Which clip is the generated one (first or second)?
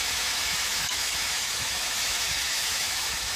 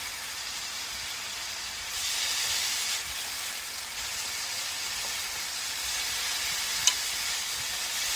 first